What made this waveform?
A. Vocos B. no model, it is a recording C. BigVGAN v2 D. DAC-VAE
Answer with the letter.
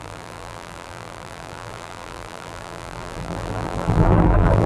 C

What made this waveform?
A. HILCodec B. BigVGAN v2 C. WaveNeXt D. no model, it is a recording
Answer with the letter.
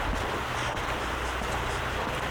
D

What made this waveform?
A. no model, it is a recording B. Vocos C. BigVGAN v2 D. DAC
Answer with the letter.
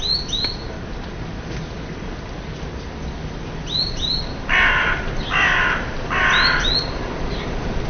A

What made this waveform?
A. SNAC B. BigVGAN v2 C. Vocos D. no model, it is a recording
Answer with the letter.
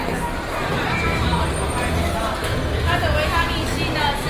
D